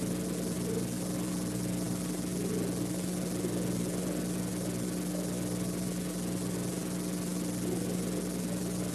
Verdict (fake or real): real